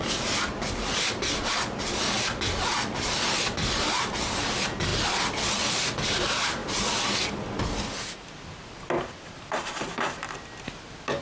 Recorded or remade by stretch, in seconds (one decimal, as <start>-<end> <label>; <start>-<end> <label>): 0.0-11.2 recorded